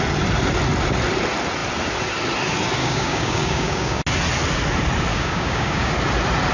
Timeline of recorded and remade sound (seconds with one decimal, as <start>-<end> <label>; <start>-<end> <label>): 0.0-2.8 recorded; 2.8-4.0 remade; 4.0-5.1 recorded; 5.1-5.9 remade; 5.9-6.5 recorded